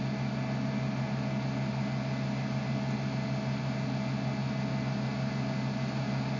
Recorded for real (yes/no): yes